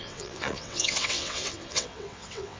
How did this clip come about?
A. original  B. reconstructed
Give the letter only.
B